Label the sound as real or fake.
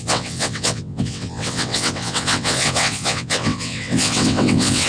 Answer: fake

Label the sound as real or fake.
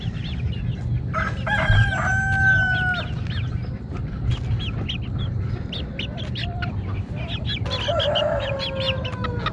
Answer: real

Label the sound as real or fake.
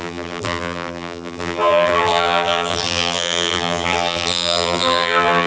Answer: fake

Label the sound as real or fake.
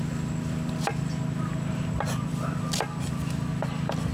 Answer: real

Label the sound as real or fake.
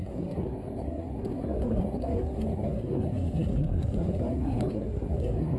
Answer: fake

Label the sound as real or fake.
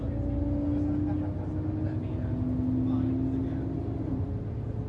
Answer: real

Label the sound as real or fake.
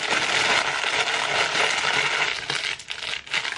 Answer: real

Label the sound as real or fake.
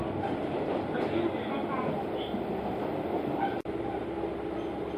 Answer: real